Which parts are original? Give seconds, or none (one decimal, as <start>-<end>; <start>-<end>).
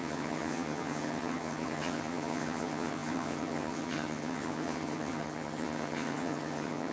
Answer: none